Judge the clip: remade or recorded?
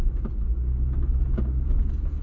recorded